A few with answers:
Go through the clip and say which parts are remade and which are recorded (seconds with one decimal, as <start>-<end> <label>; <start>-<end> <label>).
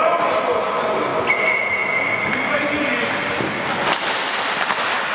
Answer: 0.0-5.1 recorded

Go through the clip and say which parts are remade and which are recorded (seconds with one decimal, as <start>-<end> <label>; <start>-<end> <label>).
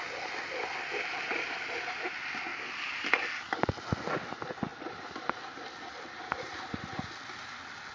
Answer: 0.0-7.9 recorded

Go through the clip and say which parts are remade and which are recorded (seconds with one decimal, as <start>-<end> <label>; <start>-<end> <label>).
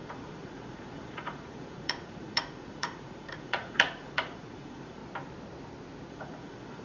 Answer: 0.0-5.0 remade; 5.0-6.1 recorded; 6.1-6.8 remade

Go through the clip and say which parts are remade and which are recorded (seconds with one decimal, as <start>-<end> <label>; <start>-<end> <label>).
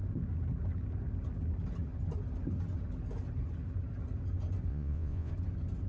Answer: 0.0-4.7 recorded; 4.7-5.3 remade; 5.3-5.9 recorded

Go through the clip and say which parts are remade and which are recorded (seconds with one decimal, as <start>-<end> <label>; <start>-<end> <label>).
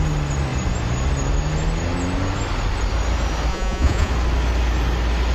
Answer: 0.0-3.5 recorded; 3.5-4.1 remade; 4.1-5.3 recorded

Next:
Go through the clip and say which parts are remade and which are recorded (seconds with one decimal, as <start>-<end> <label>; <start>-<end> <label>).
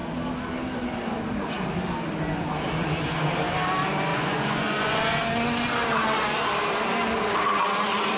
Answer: 0.0-4.1 recorded; 4.1-5.0 remade; 5.0-8.2 recorded